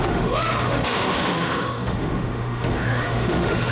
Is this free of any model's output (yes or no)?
no